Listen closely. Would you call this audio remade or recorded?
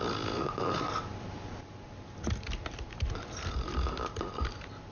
recorded